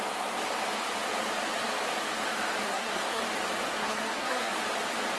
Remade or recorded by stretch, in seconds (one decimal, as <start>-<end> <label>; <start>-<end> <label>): 0.0-2.6 recorded; 2.6-3.2 remade; 3.2-3.7 recorded; 3.7-4.5 remade; 4.5-5.2 recorded